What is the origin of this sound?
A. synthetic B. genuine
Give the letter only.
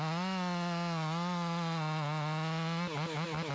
B